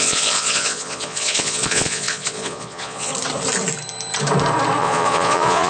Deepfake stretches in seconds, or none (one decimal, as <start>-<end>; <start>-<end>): 0.0-3.1; 4.8-5.7